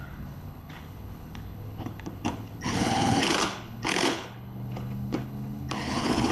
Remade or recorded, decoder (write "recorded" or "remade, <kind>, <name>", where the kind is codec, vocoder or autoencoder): remade, codec, HILCodec